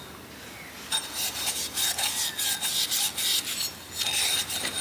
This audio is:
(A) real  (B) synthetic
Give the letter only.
A